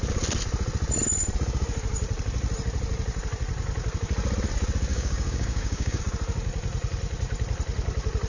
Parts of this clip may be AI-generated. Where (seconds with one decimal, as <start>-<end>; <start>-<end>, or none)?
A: 4.9-6.0